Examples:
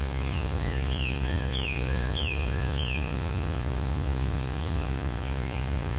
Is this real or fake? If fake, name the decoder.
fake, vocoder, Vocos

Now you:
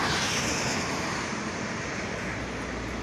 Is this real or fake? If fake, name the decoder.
real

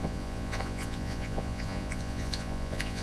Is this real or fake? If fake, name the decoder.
fake, vocoder, Vocos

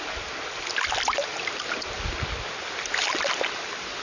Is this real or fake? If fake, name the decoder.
real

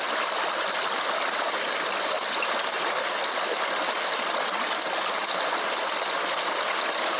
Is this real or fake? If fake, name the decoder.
real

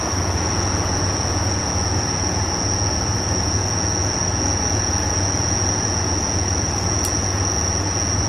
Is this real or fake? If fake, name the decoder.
fake, vocoder, Vocos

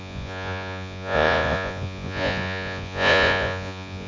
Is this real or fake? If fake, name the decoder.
fake, vocoder, Vocos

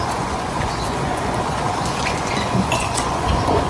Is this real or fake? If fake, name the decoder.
fake, vocoder, Vocos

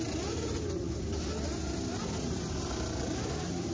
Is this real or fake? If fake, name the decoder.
real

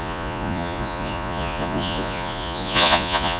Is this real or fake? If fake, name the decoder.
fake, vocoder, Vocos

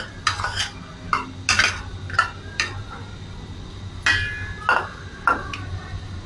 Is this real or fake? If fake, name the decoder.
real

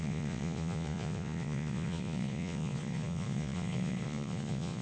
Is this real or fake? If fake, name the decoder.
fake, vocoder, Vocos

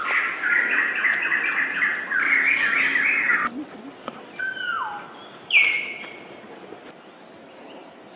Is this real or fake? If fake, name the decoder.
real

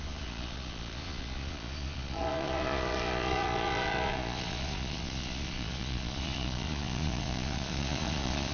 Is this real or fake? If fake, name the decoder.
fake, vocoder, Vocos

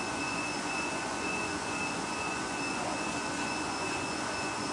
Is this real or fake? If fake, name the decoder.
fake, vocoder, Vocos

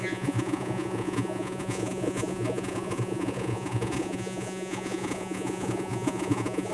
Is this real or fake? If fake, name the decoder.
fake, vocoder, Vocos